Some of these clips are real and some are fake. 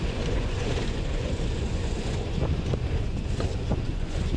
fake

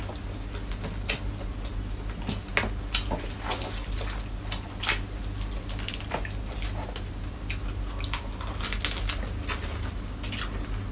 real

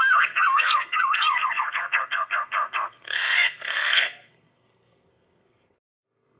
fake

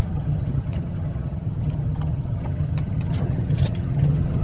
fake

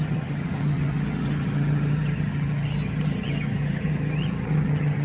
fake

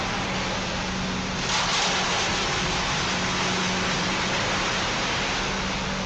real